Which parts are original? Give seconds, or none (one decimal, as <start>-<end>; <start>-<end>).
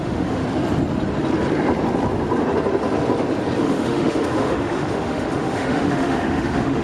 0.4-3.6